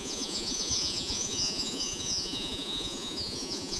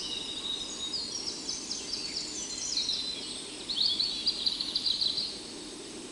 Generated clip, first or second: first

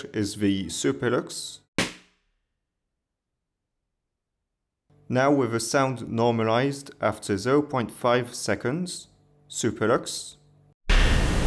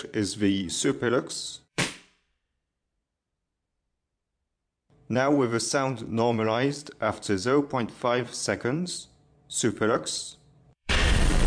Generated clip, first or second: second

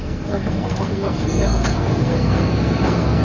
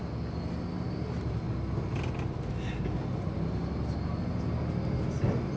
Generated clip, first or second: first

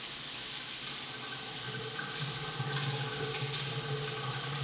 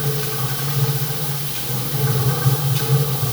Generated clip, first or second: second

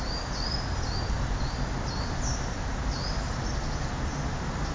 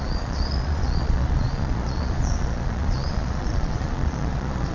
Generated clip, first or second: second